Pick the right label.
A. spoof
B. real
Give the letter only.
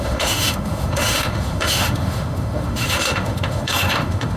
A